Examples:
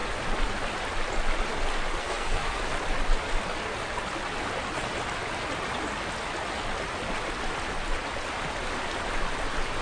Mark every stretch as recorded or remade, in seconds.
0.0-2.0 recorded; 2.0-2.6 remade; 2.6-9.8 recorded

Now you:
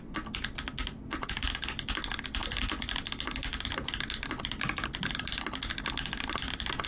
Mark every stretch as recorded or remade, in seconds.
0.0-6.9 recorded

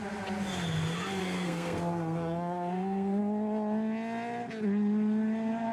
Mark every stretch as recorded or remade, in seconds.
0.0-1.2 recorded; 1.2-3.2 remade; 3.2-5.7 recorded

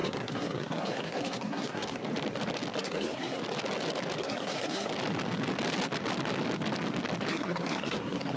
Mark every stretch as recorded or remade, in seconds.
0.0-2.0 remade; 2.0-2.8 recorded; 2.8-3.4 remade; 3.4-4.2 recorded; 4.2-4.9 remade; 4.9-7.3 recorded; 7.3-8.4 remade

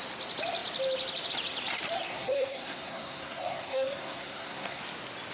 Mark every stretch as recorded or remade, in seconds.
0.0-2.1 recorded; 2.1-4.8 remade; 4.8-5.3 recorded

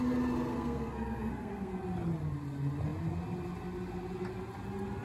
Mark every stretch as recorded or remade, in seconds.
0.0-0.5 recorded; 0.5-1.7 remade; 1.7-5.0 recorded